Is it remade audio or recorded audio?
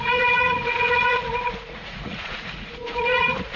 remade